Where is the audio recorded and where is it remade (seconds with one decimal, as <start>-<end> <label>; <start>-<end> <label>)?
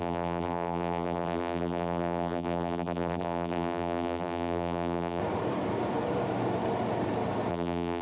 0.0-5.2 remade; 5.2-7.5 recorded; 7.5-8.0 remade